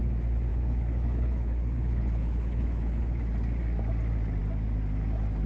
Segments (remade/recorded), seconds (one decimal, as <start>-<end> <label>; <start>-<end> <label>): 0.0-0.5 recorded; 0.5-3.2 remade; 3.2-5.5 recorded